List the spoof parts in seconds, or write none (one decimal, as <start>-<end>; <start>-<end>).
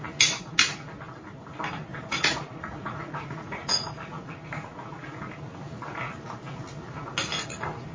1.9-3.7